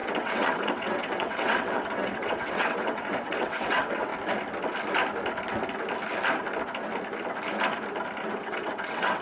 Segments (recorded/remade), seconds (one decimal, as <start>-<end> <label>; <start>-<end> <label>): 0.0-4.1 remade; 4.1-8.3 recorded; 8.3-9.2 remade